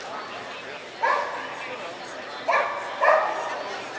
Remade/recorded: recorded